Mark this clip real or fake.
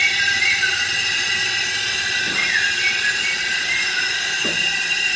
real